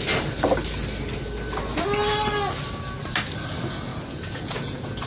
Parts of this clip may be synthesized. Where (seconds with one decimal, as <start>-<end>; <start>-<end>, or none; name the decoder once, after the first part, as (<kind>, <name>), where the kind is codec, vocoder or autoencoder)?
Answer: 3.9-5.1 (vocoder, Vocos)